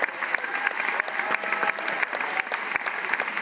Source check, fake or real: real